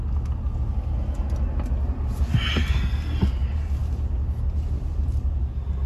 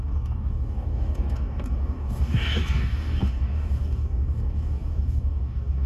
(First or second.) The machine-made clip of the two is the second